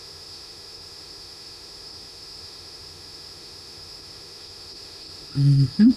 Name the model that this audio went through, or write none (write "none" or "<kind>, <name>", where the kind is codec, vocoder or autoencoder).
autoencoder, DAC-VAE